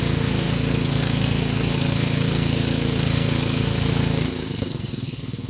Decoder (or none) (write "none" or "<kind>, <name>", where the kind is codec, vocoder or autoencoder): codec, SNAC